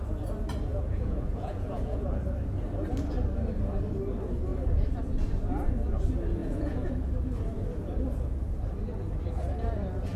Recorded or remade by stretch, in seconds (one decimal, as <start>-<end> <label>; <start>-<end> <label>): 0.0-0.7 recorded; 0.7-2.1 remade; 2.1-6.4 recorded; 6.4-6.9 remade; 6.9-10.2 recorded